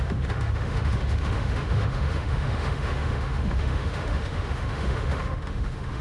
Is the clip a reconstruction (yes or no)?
yes